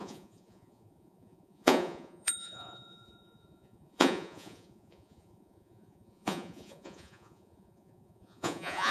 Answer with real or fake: fake